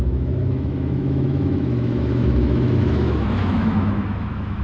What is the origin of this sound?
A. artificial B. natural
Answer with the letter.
A